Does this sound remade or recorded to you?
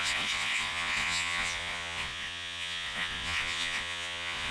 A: remade